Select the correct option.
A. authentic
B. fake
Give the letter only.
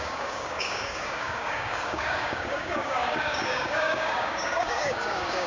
B